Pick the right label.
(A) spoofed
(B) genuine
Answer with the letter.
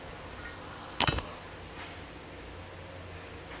B